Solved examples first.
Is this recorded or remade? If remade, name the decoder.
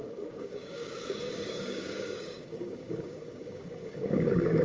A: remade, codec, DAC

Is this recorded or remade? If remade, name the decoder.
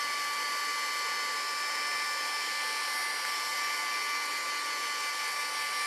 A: recorded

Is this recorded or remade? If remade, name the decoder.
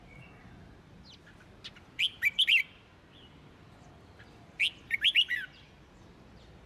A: recorded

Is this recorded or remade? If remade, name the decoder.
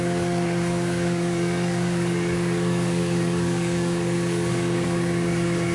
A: remade, codec, DAC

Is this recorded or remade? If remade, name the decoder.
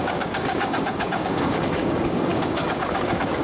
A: remade, codec, DAC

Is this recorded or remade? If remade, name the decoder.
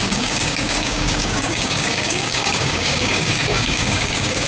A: remade, codec, DAC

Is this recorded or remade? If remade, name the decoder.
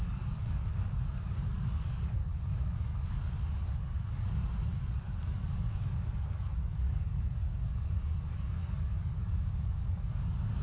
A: remade, codec, DAC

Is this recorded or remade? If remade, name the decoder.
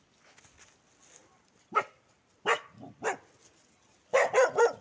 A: recorded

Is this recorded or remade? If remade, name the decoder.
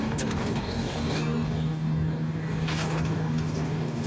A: remade, codec, DAC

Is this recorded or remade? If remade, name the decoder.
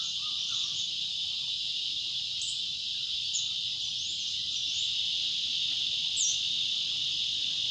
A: recorded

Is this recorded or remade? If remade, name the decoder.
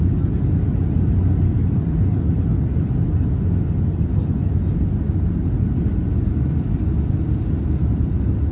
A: recorded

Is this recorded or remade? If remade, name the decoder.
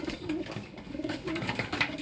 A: remade, codec, DAC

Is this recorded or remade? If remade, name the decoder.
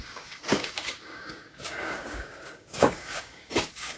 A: remade, codec, DAC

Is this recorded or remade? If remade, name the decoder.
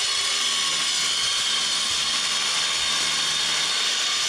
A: recorded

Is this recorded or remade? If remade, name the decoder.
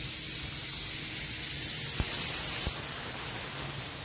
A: recorded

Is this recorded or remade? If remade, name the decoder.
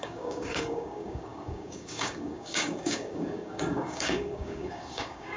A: remade, codec, DAC